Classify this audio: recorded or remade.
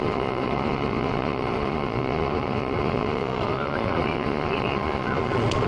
remade